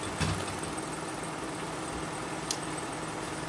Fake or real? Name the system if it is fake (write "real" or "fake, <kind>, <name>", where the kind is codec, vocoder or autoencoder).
real